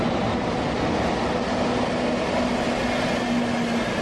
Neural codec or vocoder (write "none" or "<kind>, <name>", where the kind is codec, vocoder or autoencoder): none